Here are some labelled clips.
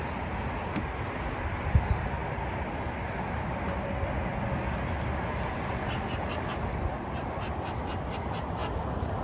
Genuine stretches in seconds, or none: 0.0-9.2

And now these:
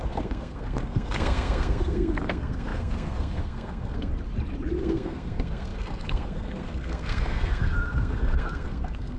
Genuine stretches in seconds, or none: 4.1-4.8

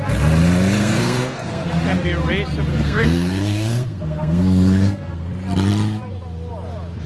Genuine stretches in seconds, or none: 0.0-0.8; 1.7-2.7; 5.3-7.1